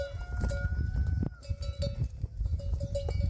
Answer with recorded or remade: recorded